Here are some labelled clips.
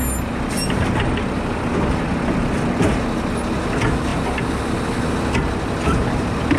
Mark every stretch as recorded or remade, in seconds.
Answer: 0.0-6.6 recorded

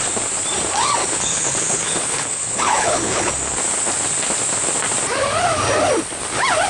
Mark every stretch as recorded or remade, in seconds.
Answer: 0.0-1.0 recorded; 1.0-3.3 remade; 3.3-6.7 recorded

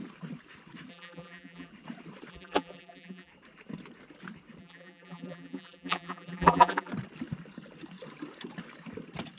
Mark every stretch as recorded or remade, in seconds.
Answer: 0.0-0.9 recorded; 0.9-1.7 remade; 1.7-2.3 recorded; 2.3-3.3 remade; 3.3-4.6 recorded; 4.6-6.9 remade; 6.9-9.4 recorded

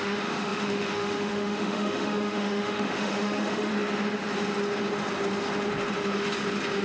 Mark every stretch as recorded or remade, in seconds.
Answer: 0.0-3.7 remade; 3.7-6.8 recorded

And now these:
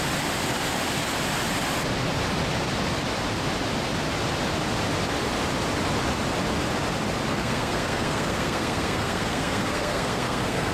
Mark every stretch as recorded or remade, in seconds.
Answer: 0.0-7.3 recorded; 7.3-10.7 remade

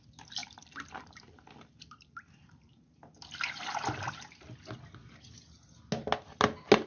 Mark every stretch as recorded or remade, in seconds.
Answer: 0.0-0.4 recorded; 0.4-3.0 remade; 3.0-6.9 recorded

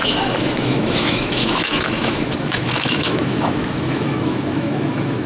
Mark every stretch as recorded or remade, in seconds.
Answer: 0.0-5.3 remade